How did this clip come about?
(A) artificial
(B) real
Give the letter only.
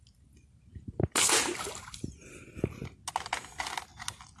B